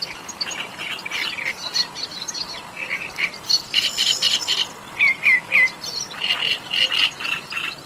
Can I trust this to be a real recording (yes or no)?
yes